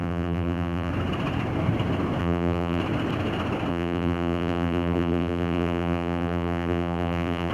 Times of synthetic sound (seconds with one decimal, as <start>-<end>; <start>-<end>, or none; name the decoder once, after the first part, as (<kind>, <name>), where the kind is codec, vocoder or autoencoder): 0.0-0.9 (vocoder, BigVGAN v2); 2.2-2.8; 3.7-7.5